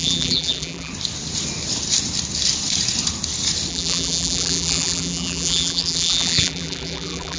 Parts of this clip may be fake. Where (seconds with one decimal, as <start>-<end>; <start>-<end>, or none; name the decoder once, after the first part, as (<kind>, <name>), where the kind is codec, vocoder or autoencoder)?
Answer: 0.0-0.9 (vocoder, BigVGAN v2); 3.7-7.4